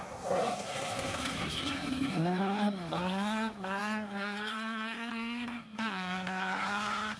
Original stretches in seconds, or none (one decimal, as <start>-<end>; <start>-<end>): none